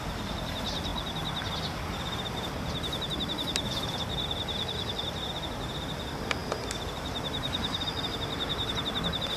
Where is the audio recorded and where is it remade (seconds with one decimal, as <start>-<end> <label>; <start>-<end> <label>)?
0.0-6.4 recorded; 6.4-7.8 remade; 7.8-9.4 recorded

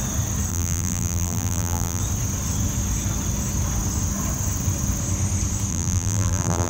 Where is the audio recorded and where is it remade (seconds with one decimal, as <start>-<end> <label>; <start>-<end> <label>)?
0.0-0.5 recorded; 0.5-2.0 remade; 2.0-5.7 recorded; 5.7-6.7 remade

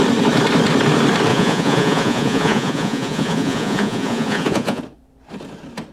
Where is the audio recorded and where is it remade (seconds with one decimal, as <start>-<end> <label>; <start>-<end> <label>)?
0.0-1.3 recorded; 1.3-4.8 remade; 4.8-5.9 recorded

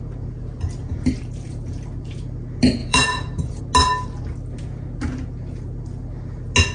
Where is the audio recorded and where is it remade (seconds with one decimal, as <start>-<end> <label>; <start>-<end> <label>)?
0.0-0.8 recorded; 0.8-1.9 remade; 1.9-2.8 recorded; 2.8-3.6 remade; 3.6-6.7 recorded

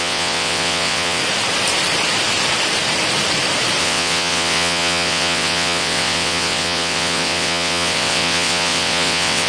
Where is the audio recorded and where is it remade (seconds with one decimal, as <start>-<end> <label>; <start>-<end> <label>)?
0.0-1.2 remade; 1.2-3.8 recorded; 3.8-9.5 remade